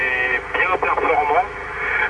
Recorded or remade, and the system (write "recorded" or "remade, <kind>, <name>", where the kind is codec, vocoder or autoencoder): recorded